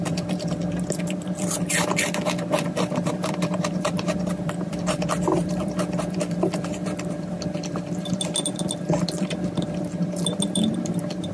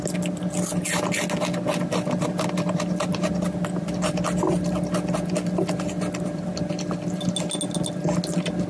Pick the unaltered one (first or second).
second